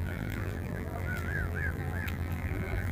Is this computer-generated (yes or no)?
yes